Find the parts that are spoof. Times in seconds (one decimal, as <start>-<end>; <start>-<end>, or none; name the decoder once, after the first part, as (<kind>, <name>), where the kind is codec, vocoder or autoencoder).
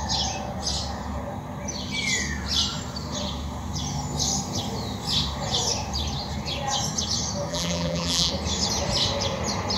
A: 7.5-8.3 (vocoder, BigVGAN v2)